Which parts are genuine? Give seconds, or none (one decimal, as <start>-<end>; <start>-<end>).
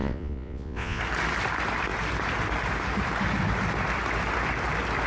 1.0-5.1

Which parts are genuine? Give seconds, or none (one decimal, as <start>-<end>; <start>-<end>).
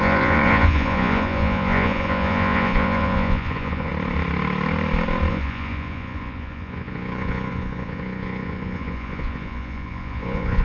3.9-5.3